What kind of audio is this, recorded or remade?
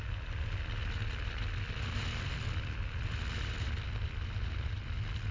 recorded